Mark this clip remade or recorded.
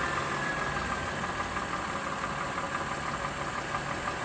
recorded